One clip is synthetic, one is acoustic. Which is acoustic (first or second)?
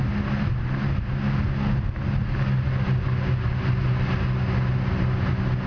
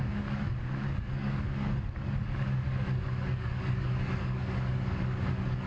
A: first